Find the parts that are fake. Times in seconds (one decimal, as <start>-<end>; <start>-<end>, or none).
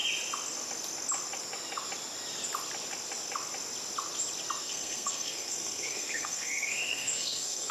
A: 4.6-7.7